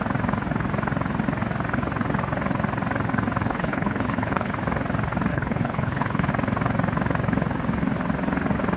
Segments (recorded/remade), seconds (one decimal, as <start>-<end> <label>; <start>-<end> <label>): 0.0-3.4 recorded; 3.4-4.5 remade; 4.5-5.3 recorded; 5.3-6.3 remade; 6.3-8.8 recorded